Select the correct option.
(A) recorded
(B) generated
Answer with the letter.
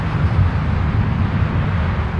A